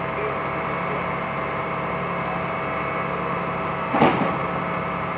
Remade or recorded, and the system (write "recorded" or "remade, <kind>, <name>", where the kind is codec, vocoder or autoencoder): recorded